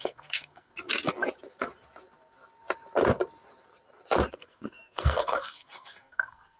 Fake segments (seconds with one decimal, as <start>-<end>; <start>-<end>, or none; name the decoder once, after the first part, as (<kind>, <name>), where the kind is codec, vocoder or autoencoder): 0.0-0.7 (codec, SNAC); 4.3-6.6